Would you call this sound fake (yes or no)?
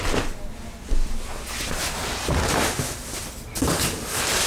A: no